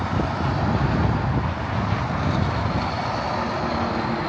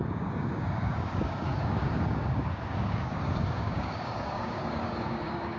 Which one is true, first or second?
first